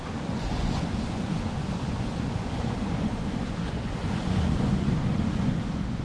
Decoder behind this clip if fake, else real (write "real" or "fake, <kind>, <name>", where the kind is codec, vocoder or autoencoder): fake, vocoder, Vocos